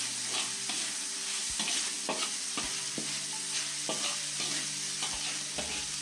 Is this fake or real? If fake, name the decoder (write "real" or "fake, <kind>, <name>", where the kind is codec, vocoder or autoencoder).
real